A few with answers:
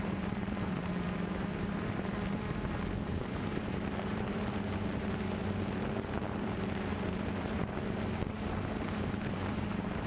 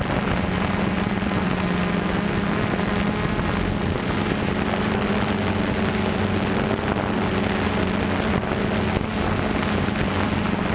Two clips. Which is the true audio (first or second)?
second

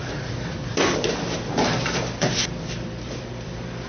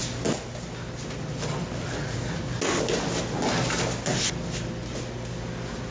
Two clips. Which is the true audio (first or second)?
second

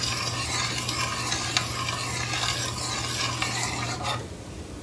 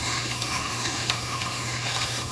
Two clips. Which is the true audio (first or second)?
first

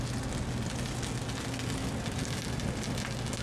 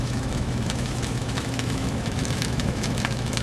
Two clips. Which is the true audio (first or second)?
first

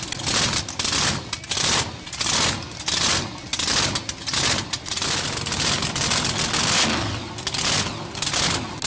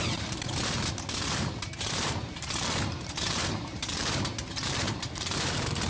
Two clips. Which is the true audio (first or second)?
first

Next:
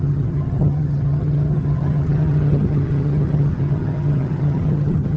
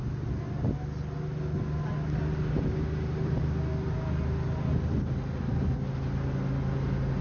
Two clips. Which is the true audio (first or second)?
second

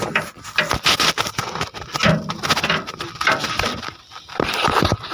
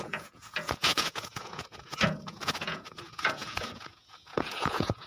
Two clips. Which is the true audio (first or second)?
first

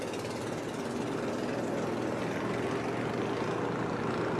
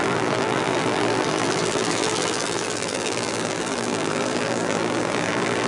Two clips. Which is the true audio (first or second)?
first